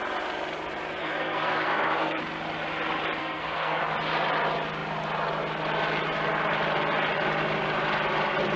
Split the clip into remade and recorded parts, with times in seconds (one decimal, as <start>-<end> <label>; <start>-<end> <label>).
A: 0.0-1.0 recorded; 1.0-2.2 remade; 2.2-3.2 recorded; 3.2-3.8 remade; 3.8-8.6 recorded